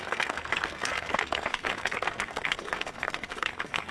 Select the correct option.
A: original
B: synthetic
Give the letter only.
B